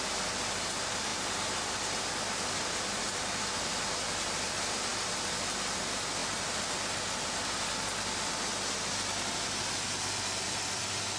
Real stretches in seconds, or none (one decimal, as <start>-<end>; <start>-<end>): 0.0-11.2

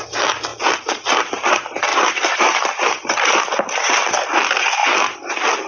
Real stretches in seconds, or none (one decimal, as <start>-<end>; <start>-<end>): 0.0-1.9; 3.4-4.8

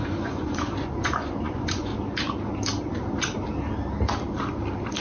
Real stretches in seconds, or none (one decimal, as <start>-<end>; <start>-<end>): 1.9-5.0

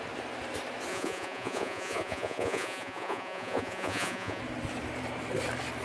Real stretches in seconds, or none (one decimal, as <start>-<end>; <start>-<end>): 0.0-0.9; 4.4-5.8

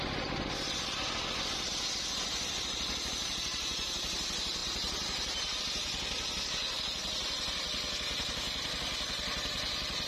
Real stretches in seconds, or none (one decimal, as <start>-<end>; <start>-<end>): 0.0-4.6; 5.6-10.1

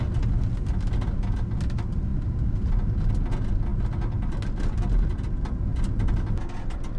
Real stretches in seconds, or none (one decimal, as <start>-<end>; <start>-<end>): 0.0-7.0